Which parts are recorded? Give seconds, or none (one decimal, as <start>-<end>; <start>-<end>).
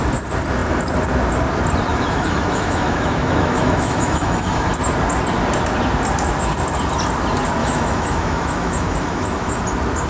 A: 0.0-1.9; 4.7-7.6; 9.6-10.1